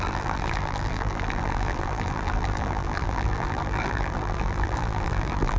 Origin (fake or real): fake